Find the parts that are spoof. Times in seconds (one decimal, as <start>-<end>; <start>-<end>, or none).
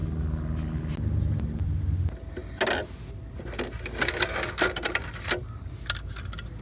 none